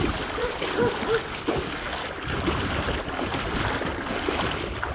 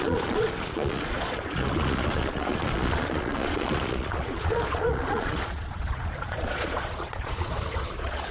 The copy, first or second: second